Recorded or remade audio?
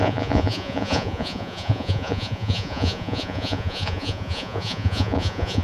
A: remade